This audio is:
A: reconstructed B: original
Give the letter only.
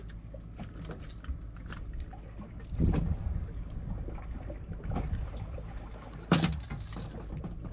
B